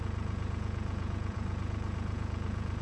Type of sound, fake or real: fake